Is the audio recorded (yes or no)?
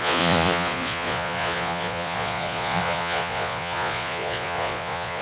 no